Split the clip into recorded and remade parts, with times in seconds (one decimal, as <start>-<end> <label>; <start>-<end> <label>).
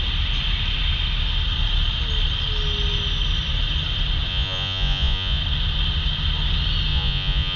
0.0-4.3 recorded; 4.3-5.4 remade; 5.4-6.9 recorded; 6.9-7.6 remade